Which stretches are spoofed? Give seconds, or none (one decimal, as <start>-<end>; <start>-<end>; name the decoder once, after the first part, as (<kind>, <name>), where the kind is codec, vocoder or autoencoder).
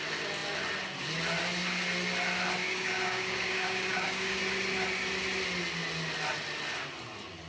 2.6-4.4 (codec, DAC)